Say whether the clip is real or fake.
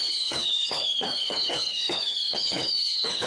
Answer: fake